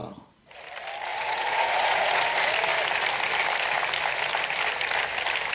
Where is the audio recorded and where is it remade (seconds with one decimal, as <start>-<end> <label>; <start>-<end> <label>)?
0.0-0.6 remade; 0.6-1.1 recorded; 1.1-2.2 remade; 2.2-5.5 recorded